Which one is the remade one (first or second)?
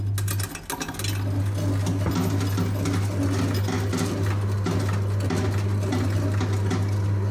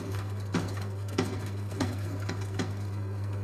second